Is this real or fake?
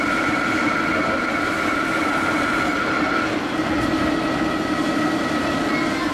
real